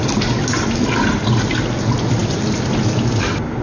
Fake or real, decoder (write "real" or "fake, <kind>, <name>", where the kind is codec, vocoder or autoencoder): real